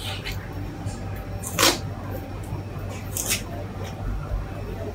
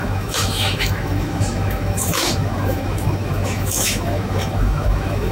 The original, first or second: first